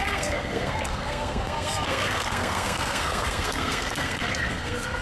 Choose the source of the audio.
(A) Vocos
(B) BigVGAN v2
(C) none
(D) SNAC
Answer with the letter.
D